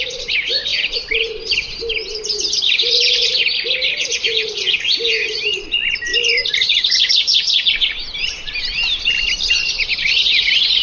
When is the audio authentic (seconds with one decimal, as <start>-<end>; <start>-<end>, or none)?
0.0-10.8